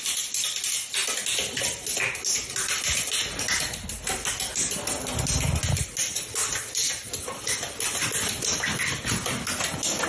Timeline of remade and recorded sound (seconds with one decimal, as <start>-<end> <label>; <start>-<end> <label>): 0.0-6.4 recorded; 6.4-9.1 remade; 9.1-10.1 recorded